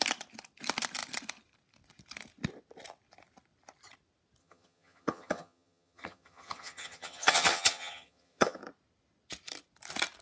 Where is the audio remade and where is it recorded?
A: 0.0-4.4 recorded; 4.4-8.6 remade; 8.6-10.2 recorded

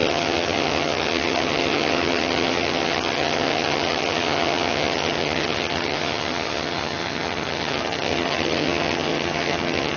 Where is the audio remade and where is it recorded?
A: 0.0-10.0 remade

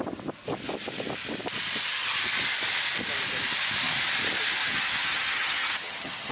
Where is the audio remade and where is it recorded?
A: 0.0-4.6 recorded; 4.6-6.3 remade